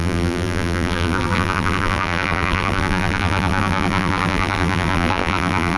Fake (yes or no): yes